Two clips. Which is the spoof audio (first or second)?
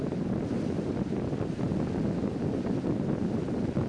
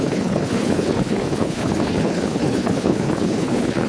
second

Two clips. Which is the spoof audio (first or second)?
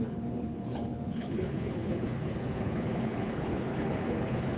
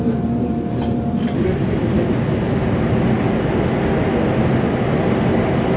first